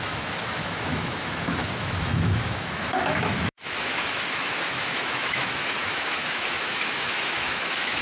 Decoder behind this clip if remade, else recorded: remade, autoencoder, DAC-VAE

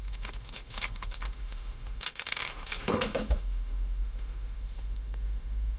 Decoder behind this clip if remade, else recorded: remade, autoencoder, DAC-VAE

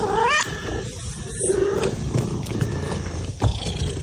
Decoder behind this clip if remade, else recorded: recorded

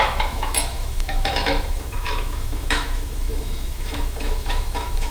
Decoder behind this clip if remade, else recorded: remade, autoencoder, DAC-VAE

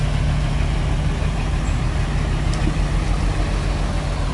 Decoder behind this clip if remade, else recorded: recorded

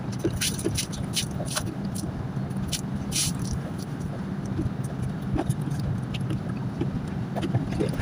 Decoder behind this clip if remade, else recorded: recorded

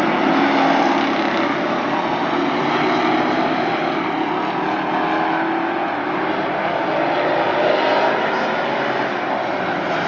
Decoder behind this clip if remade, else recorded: recorded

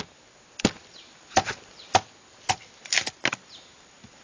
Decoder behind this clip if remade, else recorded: recorded